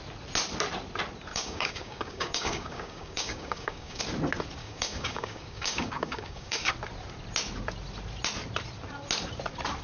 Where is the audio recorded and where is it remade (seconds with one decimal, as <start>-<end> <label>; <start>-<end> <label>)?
0.0-1.3 recorded; 1.3-4.0 remade; 4.0-4.6 recorded; 4.6-6.7 remade; 6.7-9.8 recorded